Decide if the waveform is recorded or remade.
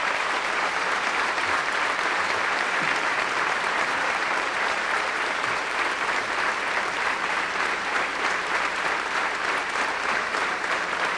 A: remade